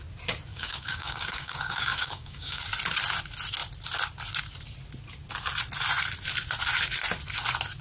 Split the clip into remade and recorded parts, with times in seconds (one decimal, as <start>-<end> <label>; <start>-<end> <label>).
0.0-0.5 recorded; 0.5-2.6 remade; 2.6-7.8 recorded